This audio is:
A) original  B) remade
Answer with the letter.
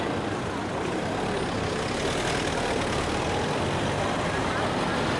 A